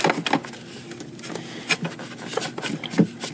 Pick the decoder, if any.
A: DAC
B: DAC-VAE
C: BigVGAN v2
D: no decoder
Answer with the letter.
D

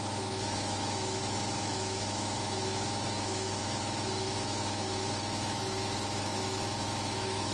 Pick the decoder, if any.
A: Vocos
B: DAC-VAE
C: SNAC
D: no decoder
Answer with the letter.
B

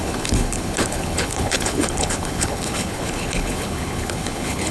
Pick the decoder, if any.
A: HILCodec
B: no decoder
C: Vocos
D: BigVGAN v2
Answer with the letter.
A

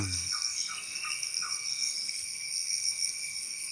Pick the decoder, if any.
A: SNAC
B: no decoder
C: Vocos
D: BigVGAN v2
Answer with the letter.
A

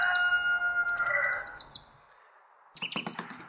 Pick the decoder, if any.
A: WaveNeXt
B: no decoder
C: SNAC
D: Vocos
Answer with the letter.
B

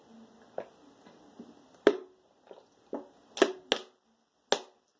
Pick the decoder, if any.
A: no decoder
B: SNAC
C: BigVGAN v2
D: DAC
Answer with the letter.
A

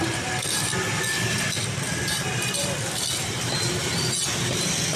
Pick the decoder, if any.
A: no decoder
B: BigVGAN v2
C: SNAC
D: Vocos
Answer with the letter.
A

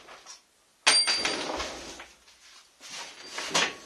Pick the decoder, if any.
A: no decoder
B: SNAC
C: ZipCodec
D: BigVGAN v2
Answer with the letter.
A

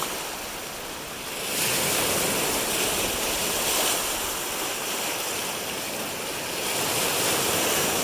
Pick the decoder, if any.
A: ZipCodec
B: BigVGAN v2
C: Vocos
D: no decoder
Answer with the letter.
D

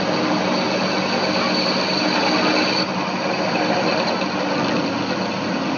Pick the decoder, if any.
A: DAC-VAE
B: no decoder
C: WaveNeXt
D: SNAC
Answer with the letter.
B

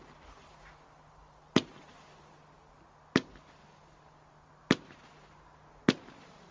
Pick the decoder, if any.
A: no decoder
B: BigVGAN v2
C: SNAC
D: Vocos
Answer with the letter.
A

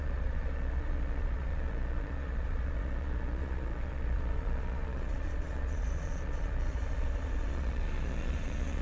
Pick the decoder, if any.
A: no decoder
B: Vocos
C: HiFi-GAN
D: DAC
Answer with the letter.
B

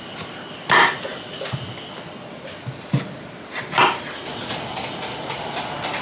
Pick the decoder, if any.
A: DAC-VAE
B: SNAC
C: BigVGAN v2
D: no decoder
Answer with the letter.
D